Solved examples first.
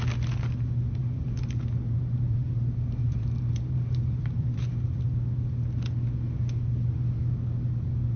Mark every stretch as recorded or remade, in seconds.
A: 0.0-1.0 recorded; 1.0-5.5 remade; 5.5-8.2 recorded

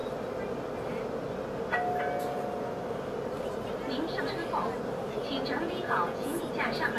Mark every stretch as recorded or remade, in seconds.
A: 0.0-5.6 recorded; 5.6-6.4 remade; 6.4-7.0 recorded